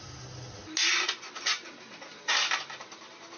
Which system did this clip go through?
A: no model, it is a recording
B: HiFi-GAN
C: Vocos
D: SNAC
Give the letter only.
A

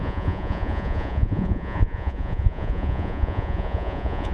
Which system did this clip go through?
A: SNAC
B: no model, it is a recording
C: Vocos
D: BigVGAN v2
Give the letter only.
C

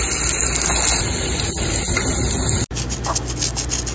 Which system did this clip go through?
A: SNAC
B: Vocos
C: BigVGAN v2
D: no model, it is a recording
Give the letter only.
D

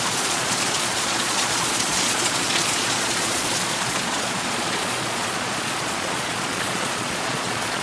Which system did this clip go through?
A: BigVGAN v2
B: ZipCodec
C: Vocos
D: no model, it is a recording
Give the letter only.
C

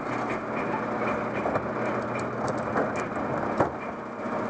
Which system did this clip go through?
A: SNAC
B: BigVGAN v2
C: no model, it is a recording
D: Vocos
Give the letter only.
C